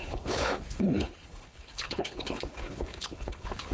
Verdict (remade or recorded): remade